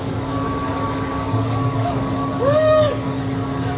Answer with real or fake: fake